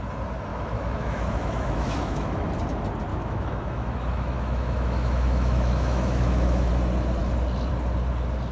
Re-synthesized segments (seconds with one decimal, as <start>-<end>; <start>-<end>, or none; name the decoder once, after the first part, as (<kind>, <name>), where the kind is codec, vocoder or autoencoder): 0.5-2.5 (autoencoder, DAC-VAE); 3.1-6.7